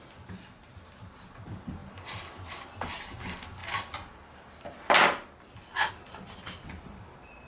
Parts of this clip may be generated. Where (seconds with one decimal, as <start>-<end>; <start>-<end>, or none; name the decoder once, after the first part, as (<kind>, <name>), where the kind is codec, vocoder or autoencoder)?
none